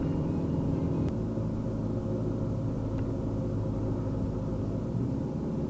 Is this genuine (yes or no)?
yes